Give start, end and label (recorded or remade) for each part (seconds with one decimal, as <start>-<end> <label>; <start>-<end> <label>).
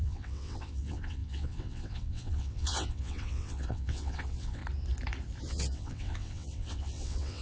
0.0-4.6 remade; 4.6-5.4 recorded; 5.4-7.4 remade